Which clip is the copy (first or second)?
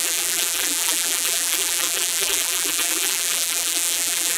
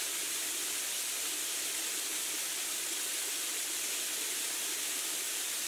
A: first